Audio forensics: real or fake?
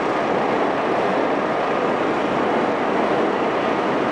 real